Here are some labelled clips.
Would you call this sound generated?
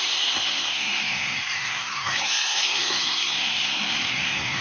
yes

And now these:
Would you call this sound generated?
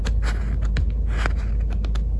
no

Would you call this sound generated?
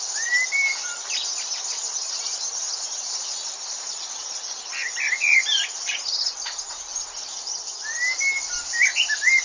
no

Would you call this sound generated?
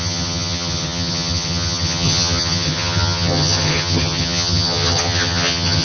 yes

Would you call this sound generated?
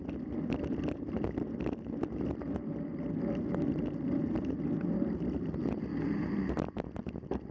yes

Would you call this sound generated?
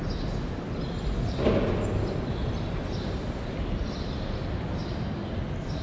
no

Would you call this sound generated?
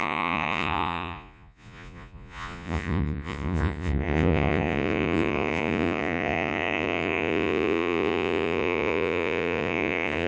yes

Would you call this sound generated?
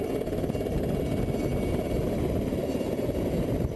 no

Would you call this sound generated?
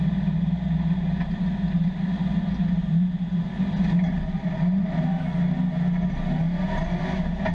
no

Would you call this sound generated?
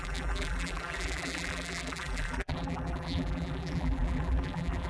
yes